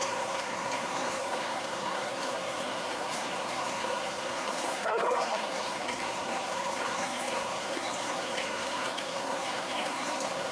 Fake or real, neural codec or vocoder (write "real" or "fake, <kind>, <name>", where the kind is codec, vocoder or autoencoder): fake, codec, SNAC